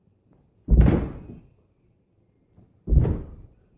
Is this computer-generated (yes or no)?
yes